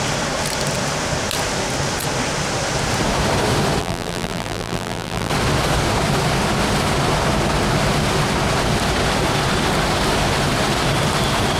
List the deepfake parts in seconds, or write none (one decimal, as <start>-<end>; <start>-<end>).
3.8-5.3